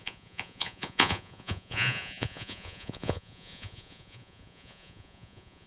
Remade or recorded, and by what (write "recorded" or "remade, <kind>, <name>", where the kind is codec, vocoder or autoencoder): remade, vocoder, Vocos